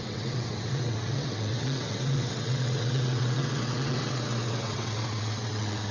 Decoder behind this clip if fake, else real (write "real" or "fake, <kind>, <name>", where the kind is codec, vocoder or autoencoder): fake, vocoder, WaveNeXt